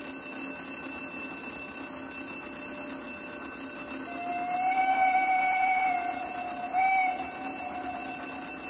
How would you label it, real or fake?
real